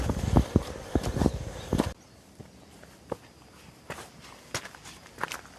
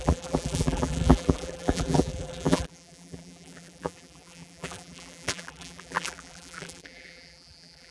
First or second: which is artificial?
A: second